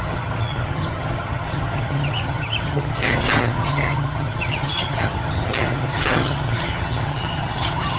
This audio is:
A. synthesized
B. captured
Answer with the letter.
A